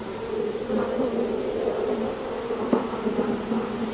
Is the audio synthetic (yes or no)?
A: no